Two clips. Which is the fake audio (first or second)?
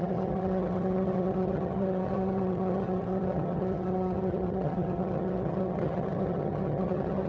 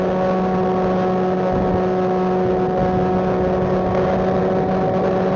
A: first